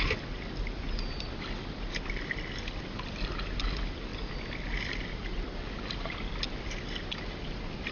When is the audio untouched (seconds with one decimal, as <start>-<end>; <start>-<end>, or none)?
0.0-7.9